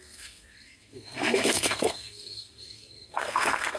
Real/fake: fake